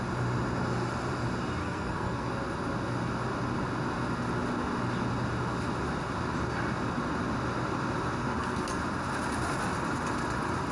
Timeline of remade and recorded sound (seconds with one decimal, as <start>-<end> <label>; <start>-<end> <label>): 0.0-1.6 recorded; 1.6-2.3 remade; 2.3-8.2 recorded; 8.2-8.8 remade; 8.8-10.7 recorded